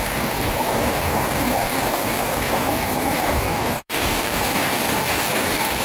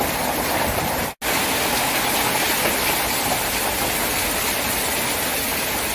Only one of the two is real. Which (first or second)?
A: second